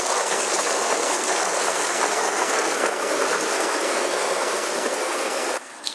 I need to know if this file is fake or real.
fake